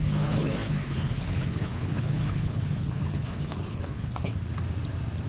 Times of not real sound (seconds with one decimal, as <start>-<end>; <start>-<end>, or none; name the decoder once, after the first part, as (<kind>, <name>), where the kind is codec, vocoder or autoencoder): 0.0-4.3 (codec, HILCodec)